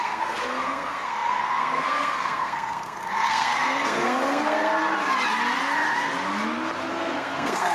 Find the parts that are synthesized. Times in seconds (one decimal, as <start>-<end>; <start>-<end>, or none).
0.0-4.7; 6.9-7.7